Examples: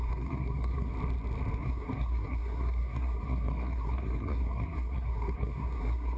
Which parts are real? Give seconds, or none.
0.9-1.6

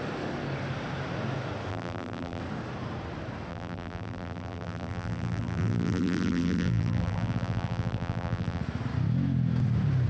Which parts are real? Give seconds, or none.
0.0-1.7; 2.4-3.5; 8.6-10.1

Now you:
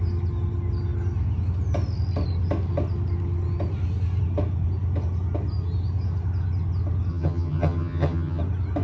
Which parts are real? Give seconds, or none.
0.0-7.1; 8.4-8.8

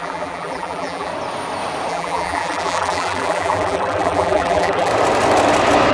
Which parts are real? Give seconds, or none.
1.1-1.9; 4.9-5.9

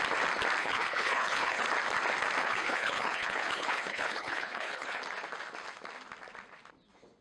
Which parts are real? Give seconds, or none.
0.0-0.6; 1.6-2.4; 5.0-7.2

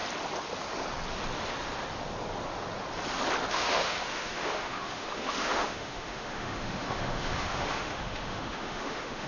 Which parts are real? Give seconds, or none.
0.0-3.5